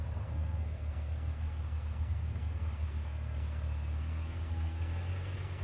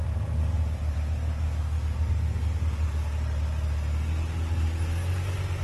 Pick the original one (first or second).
second